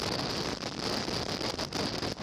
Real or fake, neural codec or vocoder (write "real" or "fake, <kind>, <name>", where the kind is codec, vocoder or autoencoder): real